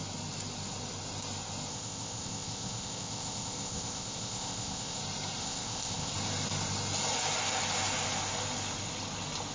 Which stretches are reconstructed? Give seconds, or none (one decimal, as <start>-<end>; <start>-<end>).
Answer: 1.7-5.0; 5.4-6.1